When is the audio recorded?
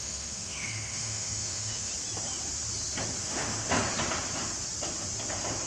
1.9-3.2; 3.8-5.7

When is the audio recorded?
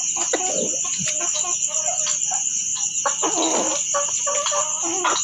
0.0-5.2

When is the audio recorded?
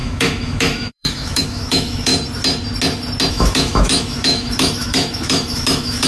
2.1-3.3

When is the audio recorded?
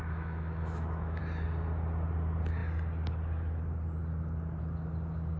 1.2-5.4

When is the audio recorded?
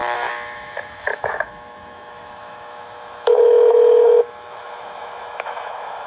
none